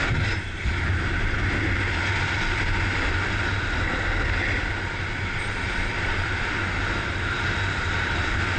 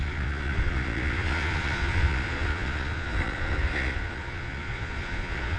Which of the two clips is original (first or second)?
first